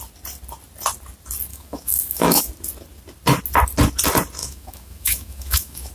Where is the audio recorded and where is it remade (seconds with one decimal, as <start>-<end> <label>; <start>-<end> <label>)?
0.0-1.5 recorded; 1.5-2.5 remade; 2.5-4.4 recorded; 4.4-5.9 remade